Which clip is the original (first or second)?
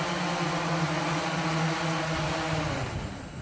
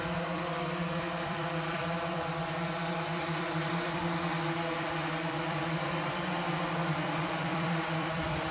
first